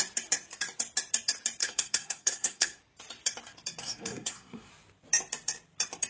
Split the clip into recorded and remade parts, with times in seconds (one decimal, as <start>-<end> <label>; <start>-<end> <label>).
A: 0.0-1.6 recorded; 1.6-2.8 remade; 2.8-3.8 recorded; 3.8-4.7 remade; 4.7-6.1 recorded